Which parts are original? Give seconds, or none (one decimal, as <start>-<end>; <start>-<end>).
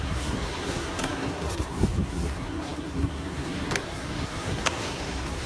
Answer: none